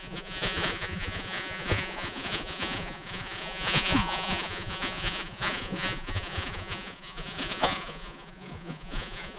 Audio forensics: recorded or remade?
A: remade